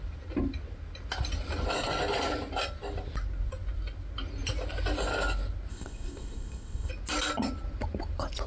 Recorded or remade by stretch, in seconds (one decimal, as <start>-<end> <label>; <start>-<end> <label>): 0.0-5.7 recorded; 5.7-6.9 remade; 6.9-8.5 recorded